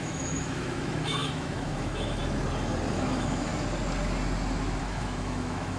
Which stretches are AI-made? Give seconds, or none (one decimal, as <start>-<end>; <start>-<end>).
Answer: 0.0-2.2; 2.9-3.5; 4.8-5.8